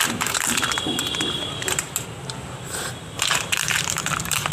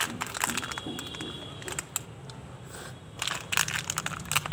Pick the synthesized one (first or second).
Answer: first